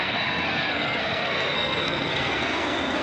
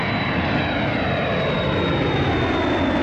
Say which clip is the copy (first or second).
first